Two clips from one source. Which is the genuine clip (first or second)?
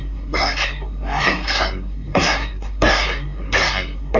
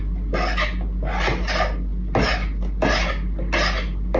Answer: second